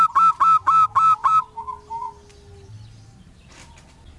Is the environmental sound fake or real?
real